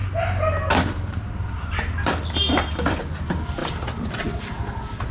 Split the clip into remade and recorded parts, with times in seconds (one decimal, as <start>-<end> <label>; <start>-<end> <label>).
0.0-5.1 recorded

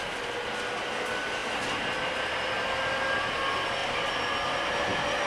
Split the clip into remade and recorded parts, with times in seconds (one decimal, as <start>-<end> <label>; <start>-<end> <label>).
0.0-5.3 recorded

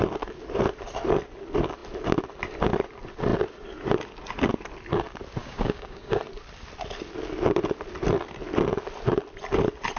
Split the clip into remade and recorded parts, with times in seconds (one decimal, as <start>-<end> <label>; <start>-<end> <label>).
0.0-5.4 recorded; 5.4-6.2 remade; 6.2-10.0 recorded

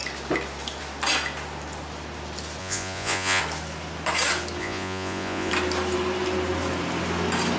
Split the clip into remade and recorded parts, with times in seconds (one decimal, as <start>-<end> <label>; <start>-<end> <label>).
0.0-2.6 recorded; 2.6-3.4 remade; 3.4-4.6 recorded; 4.6-5.5 remade; 5.5-7.6 recorded

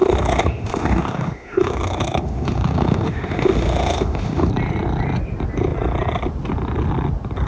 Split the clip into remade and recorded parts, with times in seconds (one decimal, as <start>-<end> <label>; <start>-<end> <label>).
0.0-4.5 remade; 4.5-7.5 recorded